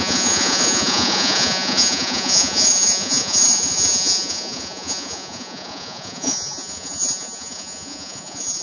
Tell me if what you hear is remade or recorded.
remade